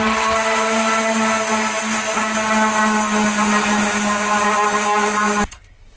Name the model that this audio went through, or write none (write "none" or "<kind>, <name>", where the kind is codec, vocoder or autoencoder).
none